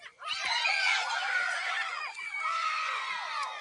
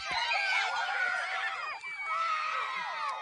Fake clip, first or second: first